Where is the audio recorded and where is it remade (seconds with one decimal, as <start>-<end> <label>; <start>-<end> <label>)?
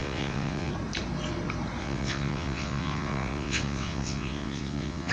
0.0-0.7 remade; 0.7-1.8 recorded; 1.8-5.1 remade